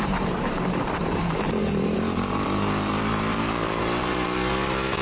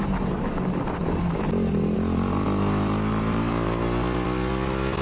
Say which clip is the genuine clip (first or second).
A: second